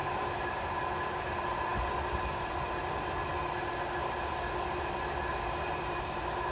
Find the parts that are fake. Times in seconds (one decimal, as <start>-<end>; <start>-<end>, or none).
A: none